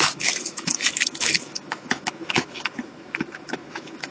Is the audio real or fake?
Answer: fake